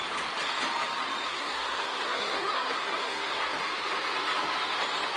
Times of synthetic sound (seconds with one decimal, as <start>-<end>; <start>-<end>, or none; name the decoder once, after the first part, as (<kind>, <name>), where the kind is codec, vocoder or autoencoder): 1.3-3.4 (codec, SNAC)